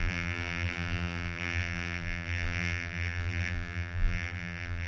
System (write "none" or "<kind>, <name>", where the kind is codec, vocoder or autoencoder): vocoder, BigVGAN v2